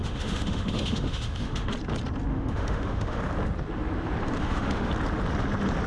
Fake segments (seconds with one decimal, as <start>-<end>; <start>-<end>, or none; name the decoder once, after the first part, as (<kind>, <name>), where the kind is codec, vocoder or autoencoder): 0.0-1.7 (autoencoder, DAC-VAE); 2.3-3.2; 4.4-4.9